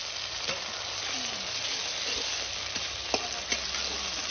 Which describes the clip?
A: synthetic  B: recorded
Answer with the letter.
B